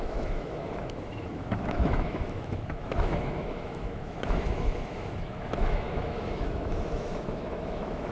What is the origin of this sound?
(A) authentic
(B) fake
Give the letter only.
B